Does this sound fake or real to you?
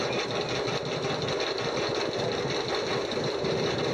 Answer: real